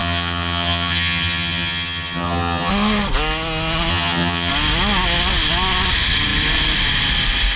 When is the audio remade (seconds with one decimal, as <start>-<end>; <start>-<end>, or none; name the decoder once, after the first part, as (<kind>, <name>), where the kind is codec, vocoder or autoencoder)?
0.0-2.7 (vocoder, HiFi-GAN); 3.9-4.5